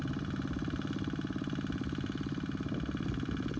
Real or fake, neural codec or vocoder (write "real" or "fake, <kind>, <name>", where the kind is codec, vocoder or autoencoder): real